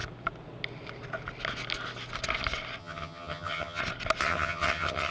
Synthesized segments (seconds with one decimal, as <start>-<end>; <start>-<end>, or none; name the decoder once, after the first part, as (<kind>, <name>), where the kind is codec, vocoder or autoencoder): 2.8-3.8 (vocoder, HiFi-GAN); 4.2-5.1